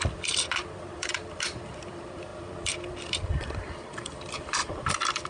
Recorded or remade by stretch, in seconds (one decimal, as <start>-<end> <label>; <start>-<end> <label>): 0.0-5.3 remade